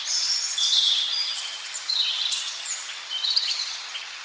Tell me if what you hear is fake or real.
fake